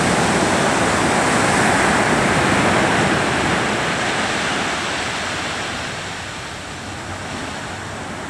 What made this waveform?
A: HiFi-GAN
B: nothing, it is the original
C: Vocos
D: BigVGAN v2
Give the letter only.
B